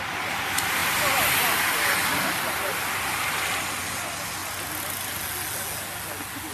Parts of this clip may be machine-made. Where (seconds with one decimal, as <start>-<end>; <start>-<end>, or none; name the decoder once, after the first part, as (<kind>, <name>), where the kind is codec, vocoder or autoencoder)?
none